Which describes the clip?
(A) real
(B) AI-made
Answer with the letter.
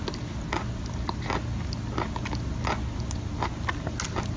A